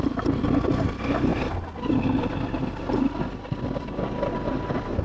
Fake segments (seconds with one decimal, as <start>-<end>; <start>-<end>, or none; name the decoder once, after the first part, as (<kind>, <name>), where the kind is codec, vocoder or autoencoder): none